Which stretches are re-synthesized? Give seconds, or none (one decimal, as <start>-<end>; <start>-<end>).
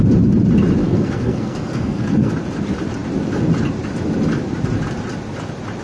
0.8-2.3